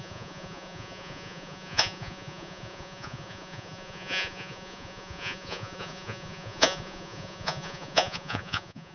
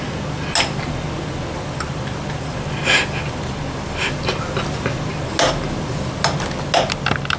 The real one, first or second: second